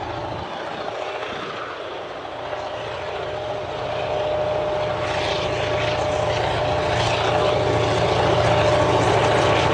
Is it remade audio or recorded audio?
recorded